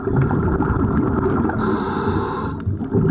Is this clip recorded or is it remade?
recorded